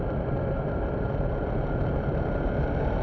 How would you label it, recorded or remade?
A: recorded